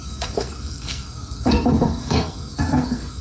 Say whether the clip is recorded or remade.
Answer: remade